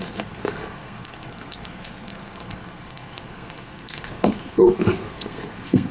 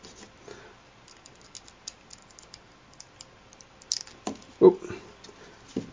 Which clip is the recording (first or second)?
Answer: second